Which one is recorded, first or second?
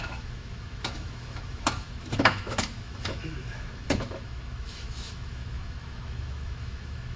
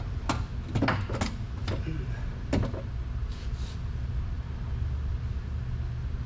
second